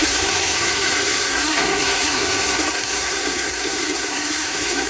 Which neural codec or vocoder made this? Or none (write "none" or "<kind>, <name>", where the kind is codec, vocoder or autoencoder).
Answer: codec, SNAC